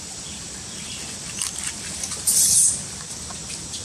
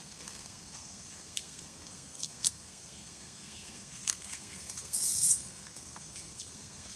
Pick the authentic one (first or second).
first